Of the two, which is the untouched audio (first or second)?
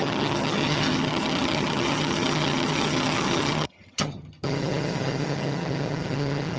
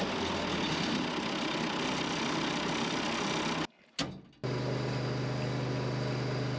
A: second